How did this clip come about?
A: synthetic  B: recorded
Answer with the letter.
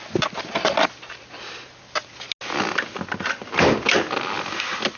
B